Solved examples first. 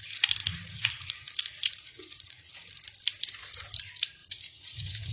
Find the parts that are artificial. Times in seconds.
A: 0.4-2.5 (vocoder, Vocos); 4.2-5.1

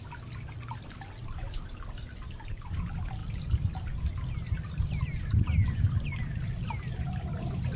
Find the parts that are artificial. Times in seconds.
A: none